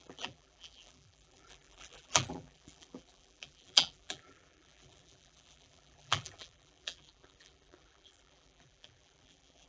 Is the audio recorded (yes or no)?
no